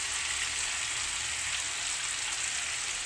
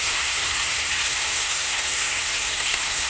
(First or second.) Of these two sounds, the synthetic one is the second